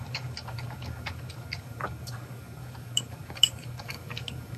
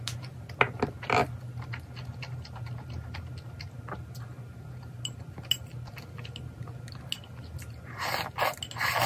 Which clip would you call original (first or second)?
second